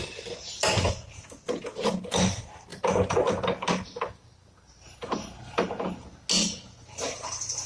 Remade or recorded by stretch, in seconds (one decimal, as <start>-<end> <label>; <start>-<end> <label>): 0.0-2.7 recorded; 2.7-3.3 remade; 3.3-7.7 recorded